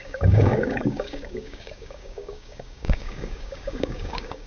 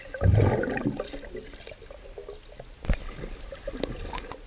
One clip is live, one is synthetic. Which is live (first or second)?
second